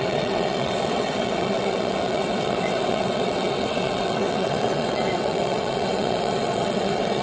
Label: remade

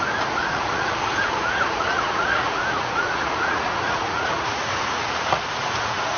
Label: remade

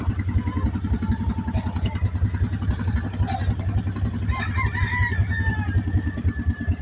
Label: recorded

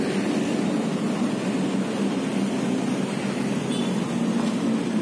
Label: recorded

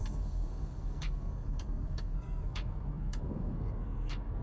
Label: remade